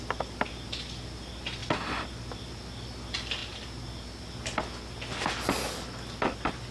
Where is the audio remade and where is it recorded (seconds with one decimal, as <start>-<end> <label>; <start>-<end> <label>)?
0.0-6.7 recorded